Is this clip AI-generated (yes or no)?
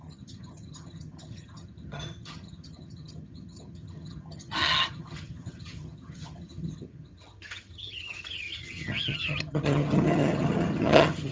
yes